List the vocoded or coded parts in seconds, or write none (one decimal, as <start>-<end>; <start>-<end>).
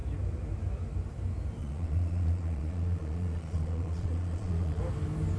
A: 1.6-4.8